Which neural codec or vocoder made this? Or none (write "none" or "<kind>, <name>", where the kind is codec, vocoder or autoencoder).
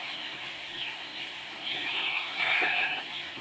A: codec, SNAC